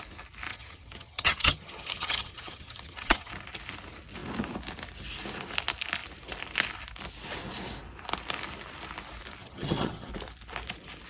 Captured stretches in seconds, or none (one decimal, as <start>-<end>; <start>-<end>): 0.0-0.5; 3.3-9.4; 10.1-11.1